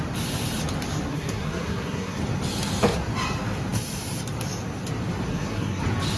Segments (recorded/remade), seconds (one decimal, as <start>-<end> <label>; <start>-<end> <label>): 0.0-1.1 recorded; 1.1-2.2 remade; 2.2-5.3 recorded; 5.3-5.8 remade; 5.8-6.2 recorded